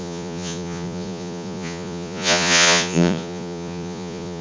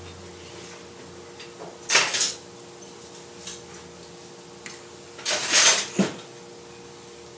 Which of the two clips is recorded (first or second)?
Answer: second